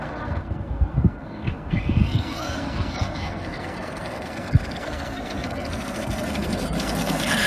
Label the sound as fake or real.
fake